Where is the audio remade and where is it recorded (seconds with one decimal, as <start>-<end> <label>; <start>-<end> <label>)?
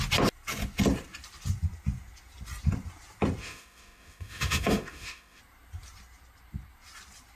0.0-3.4 recorded; 3.4-5.4 remade; 5.4-7.4 recorded